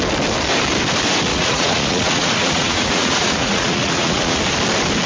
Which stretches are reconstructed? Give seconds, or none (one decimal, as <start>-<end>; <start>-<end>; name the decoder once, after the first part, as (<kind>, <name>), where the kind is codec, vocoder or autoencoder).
1.3-4.4 (vocoder, Vocos)